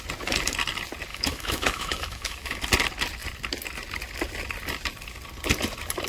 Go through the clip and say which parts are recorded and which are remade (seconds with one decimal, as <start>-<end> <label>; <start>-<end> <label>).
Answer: 0.0-1.1 recorded; 1.1-2.6 remade; 2.6-6.1 recorded